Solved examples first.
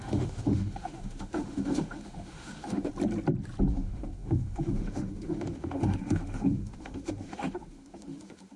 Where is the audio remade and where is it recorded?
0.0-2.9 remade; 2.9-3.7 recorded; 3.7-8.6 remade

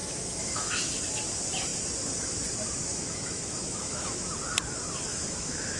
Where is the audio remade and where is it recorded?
0.0-1.0 remade; 1.0-2.9 recorded; 2.9-4.3 remade; 4.3-5.1 recorded; 5.1-5.8 remade

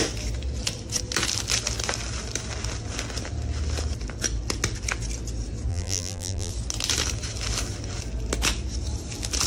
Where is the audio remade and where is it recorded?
0.0-5.7 recorded; 5.7-6.5 remade; 6.5-9.5 recorded

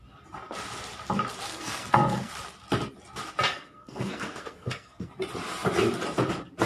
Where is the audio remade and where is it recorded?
0.0-1.5 recorded; 1.5-2.3 remade; 2.3-3.5 recorded; 3.5-5.1 remade; 5.1-6.7 recorded

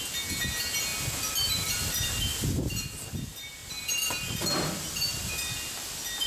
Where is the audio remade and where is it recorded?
0.0-0.9 recorded; 0.9-1.9 remade; 1.9-2.3 recorded; 2.3-3.2 remade; 3.2-3.6 recorded; 3.6-5.5 remade; 5.5-6.3 recorded

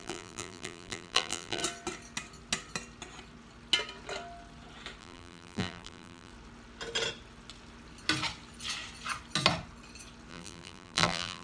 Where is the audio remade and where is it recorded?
0.0-1.6 remade; 1.6-5.0 recorded; 5.0-6.3 remade; 6.3-10.3 recorded; 10.3-11.4 remade

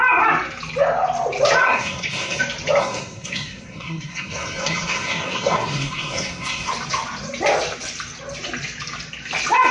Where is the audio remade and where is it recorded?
0.0-1.6 recorded; 1.6-2.4 remade; 2.4-2.8 recorded; 2.8-6.7 remade; 6.7-9.7 recorded